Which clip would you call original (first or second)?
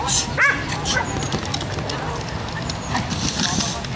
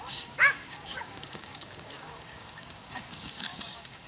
first